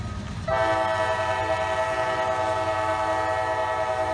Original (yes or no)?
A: yes